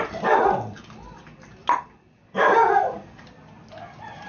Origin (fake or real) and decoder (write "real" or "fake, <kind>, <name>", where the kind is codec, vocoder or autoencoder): real